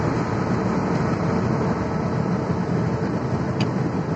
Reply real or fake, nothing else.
real